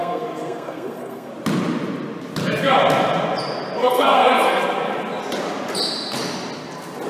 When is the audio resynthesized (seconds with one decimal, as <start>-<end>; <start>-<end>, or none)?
0.0-1.3; 3.8-4.6